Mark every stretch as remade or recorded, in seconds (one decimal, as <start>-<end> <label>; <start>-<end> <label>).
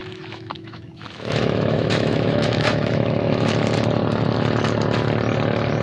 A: 0.0-3.5 remade; 3.5-5.8 recorded